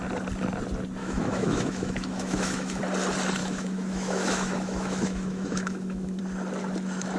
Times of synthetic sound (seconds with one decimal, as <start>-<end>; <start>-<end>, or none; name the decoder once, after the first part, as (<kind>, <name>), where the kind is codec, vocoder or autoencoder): 1.0-2.8 (autoencoder, DAC-VAE); 3.4-6.2